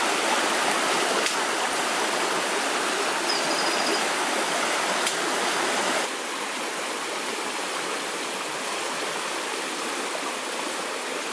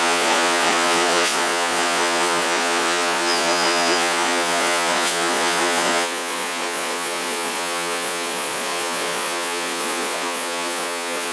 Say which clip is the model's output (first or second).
second